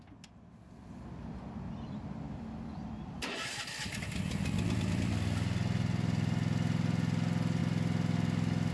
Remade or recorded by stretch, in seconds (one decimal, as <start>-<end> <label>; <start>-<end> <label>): 0.0-8.7 recorded